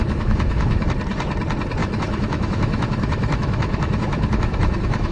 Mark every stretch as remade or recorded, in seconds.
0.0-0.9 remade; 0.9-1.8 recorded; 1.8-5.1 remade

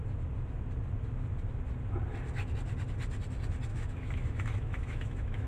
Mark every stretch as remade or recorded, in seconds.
0.0-3.7 recorded; 3.7-5.5 remade

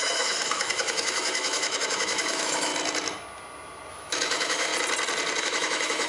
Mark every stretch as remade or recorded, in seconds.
0.0-2.7 remade; 2.7-3.9 recorded; 3.9-4.7 remade; 4.7-5.4 recorded; 5.4-6.1 remade

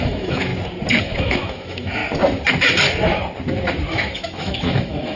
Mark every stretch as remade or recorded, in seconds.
0.0-0.5 remade; 0.5-1.0 recorded; 1.0-2.0 remade; 2.0-3.9 recorded; 3.9-5.2 remade